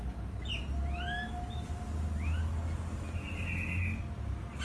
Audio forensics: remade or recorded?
recorded